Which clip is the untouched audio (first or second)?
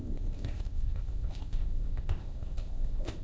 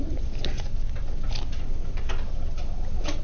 second